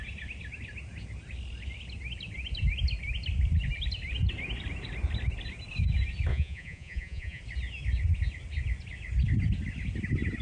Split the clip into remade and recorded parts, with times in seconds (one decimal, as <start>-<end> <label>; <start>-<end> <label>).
0.0-6.3 recorded; 6.3-7.4 remade; 7.4-10.4 recorded